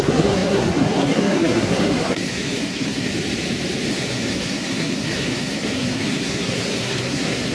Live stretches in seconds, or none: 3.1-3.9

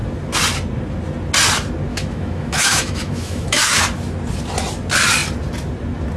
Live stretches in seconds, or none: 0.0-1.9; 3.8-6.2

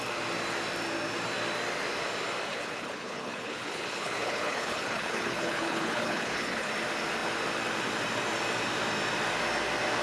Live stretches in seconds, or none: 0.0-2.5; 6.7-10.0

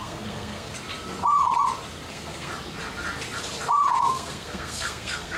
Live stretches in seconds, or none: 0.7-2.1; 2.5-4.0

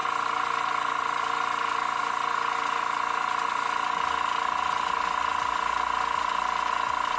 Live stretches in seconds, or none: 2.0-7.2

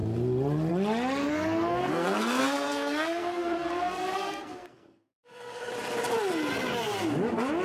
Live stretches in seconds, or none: 0.0-1.2; 5.7-7.6